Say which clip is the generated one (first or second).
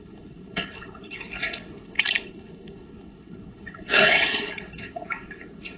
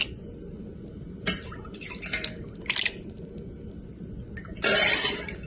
first